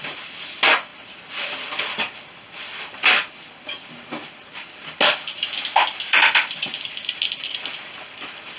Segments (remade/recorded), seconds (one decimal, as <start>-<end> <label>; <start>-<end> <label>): 0.0-8.6 recorded